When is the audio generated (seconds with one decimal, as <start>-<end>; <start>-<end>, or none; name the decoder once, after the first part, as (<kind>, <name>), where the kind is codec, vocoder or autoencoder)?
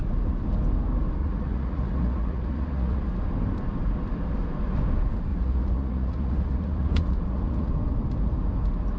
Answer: 1.2-3.0 (vocoder, Vocos); 5.3-7.7